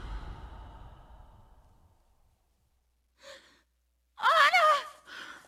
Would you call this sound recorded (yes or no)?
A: yes